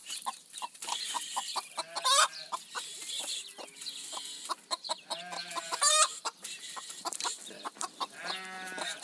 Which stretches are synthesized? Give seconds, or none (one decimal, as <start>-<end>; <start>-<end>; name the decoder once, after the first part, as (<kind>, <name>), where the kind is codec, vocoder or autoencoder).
0.0-1.2 (vocoder, BigVGAN v2)